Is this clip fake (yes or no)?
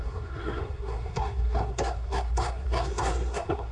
yes